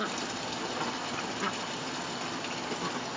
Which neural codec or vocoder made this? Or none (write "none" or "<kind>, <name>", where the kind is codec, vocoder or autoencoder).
none